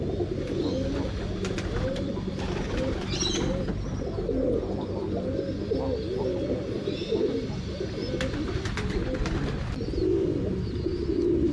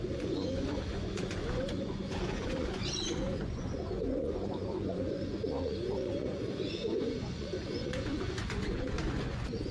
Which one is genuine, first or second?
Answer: first